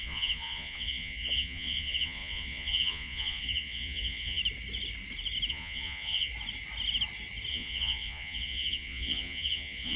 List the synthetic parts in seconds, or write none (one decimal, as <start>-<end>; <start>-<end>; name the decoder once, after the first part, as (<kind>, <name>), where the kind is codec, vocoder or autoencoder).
0.0-4.4 (vocoder, Vocos); 5.5-6.3; 7.5-10.0